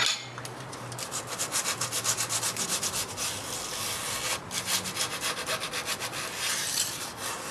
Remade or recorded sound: recorded